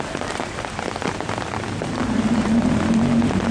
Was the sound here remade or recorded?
remade